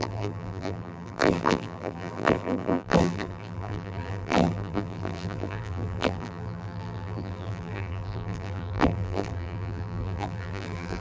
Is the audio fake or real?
fake